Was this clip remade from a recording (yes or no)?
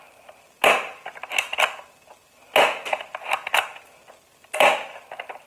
no